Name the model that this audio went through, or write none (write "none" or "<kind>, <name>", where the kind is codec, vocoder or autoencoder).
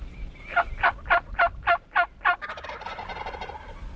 none